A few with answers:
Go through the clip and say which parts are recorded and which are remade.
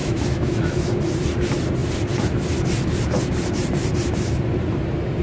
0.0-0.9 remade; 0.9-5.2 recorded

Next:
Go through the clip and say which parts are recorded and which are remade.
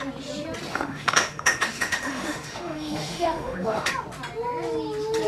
0.0-0.7 recorded; 0.7-3.9 remade; 3.9-5.3 recorded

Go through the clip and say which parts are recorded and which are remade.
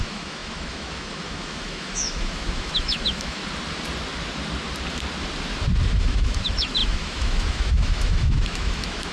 0.0-3.4 remade; 3.4-6.0 recorded; 6.0-9.1 remade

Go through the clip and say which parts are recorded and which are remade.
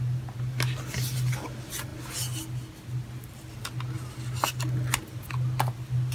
0.0-6.1 recorded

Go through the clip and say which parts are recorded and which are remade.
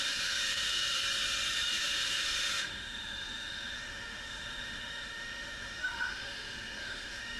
0.0-1.0 remade; 1.0-1.7 recorded; 1.7-7.4 remade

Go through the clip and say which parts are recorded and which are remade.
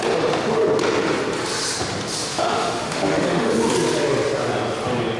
0.0-2.2 recorded; 2.2-3.7 remade; 3.7-5.2 recorded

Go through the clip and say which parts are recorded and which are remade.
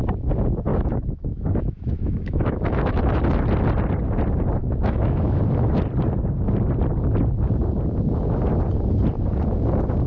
0.0-0.7 recorded; 0.7-3.0 remade; 3.0-4.6 recorded; 4.6-5.4 remade; 5.4-10.1 recorded